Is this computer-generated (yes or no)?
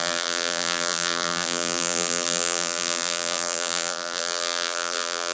yes